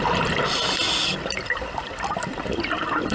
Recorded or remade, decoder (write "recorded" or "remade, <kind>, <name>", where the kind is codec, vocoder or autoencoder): remade, vocoder, BigVGAN v2